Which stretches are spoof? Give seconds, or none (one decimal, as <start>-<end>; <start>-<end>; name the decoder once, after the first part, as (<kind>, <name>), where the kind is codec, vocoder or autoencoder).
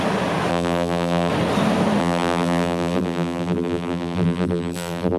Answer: 0.5-1.3 (vocoder, BigVGAN v2); 2.0-5.2